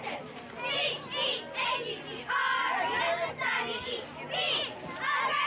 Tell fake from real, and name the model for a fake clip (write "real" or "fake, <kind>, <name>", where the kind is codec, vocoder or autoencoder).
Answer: real